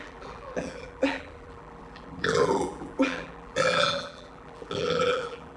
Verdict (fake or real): fake